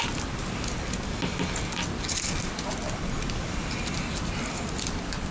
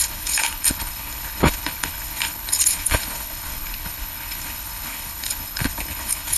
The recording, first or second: first